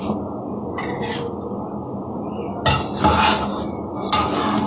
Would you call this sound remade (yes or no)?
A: no